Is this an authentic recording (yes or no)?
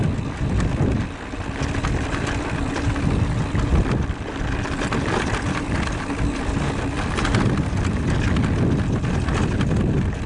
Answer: yes